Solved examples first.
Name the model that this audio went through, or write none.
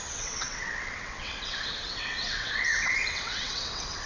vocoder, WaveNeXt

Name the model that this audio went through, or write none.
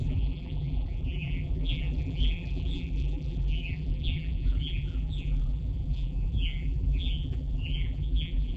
vocoder, BigVGAN v2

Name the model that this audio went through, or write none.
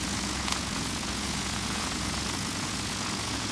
vocoder, Vocos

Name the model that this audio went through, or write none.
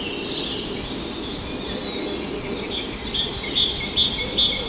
none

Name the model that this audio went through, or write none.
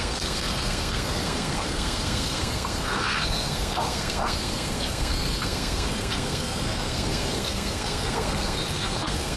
codec, SNAC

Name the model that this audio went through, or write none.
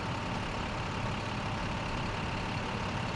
none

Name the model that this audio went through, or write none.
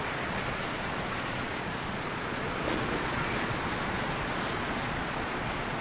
vocoder, Vocos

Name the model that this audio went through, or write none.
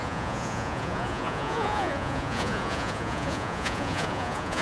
vocoder, Vocos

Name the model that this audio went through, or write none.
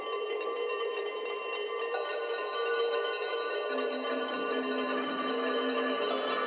vocoder, BigVGAN v2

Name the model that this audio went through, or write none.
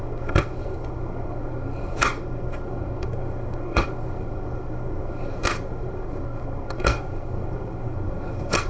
codec, SNAC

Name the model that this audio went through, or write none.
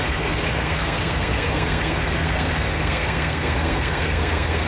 codec, SNAC